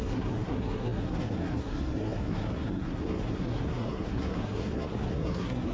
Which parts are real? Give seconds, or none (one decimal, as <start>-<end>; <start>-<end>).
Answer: none